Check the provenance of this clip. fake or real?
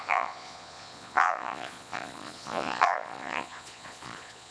fake